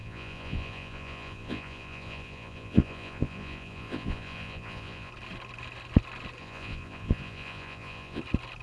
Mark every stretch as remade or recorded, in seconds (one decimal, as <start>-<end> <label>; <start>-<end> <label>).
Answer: 0.0-5.1 remade; 5.1-6.4 recorded; 6.4-8.2 remade; 8.2-8.6 recorded